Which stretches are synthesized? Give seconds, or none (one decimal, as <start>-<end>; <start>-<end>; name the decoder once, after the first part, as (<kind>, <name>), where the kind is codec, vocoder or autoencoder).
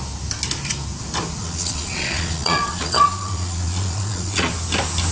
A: 1.4-4.5 (vocoder, Vocos)